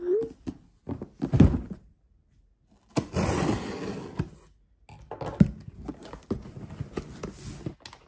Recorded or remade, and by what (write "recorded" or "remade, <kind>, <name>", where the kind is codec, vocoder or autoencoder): recorded